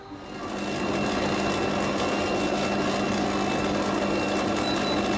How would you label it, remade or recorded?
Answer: recorded